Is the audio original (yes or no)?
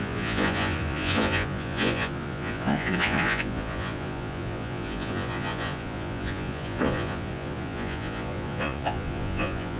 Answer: no